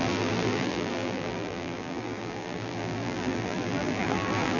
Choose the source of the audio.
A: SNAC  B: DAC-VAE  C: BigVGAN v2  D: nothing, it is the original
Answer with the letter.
C